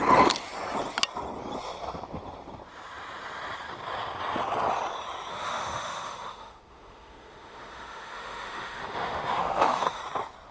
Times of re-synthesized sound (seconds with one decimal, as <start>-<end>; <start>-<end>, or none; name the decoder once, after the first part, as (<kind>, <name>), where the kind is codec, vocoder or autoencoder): 5.3-10.0 (autoencoder, DAC-VAE)